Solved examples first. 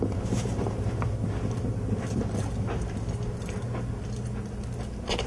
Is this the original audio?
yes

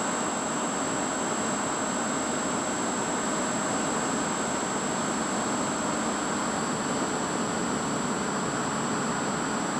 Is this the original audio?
yes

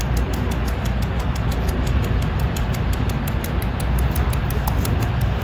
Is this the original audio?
yes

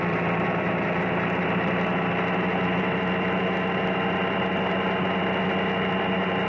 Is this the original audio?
yes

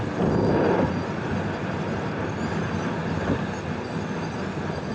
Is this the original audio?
yes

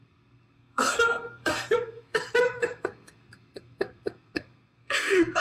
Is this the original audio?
no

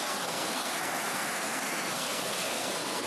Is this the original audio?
no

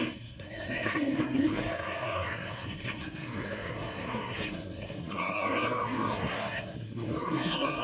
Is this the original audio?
no